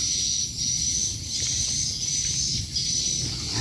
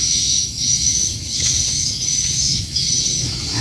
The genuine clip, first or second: first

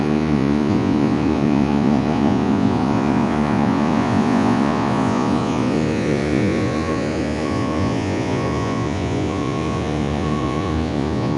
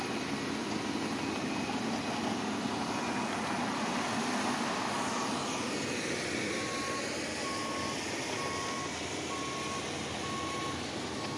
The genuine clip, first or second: second